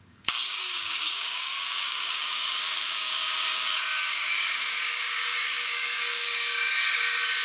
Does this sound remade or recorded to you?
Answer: remade